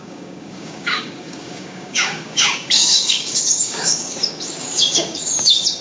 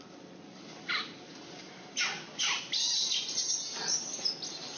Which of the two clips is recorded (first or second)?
second